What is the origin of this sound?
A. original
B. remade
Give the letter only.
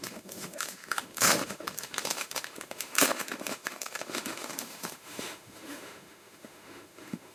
B